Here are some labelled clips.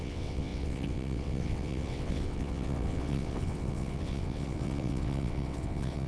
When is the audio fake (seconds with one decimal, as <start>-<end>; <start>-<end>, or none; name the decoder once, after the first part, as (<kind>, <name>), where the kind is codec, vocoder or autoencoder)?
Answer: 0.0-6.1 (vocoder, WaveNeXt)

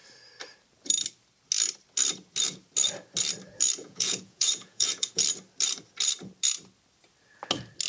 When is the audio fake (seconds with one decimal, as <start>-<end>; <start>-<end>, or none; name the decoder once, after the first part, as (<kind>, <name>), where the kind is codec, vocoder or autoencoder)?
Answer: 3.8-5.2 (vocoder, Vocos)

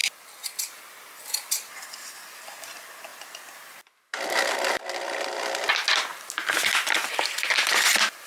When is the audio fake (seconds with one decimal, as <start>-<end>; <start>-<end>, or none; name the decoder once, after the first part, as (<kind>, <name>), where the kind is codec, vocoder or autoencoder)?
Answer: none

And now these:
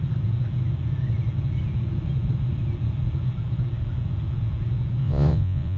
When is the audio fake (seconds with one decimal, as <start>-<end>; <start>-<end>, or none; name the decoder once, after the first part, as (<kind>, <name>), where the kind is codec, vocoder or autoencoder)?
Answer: 5.0-5.8 (vocoder, Vocos)